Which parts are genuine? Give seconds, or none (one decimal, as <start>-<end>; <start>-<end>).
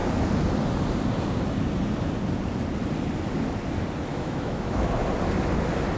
0.0-4.1; 4.9-6.0